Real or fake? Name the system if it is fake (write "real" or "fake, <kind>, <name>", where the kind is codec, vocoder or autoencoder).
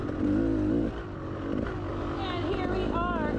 real